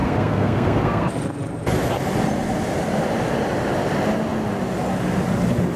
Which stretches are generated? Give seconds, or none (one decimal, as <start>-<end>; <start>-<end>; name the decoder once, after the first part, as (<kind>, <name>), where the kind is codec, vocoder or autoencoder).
0.0-1.1 (codec, SNAC)